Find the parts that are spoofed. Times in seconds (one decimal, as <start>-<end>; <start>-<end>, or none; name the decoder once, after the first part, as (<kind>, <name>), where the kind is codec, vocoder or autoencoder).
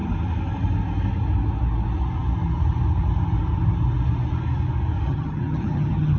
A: 5.1-6.2 (vocoder, HiFi-GAN)